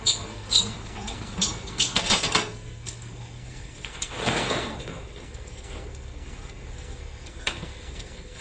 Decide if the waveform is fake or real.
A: fake